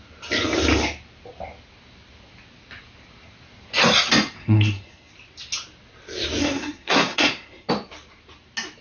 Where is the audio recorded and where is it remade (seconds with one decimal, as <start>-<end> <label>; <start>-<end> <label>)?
0.0-4.4 recorded; 4.4-5.1 remade; 5.1-6.4 recorded; 6.4-7.7 remade; 7.7-8.8 recorded